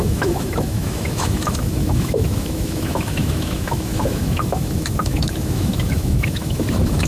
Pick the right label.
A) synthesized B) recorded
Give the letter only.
A